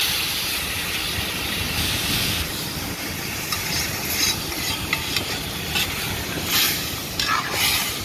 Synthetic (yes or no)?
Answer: no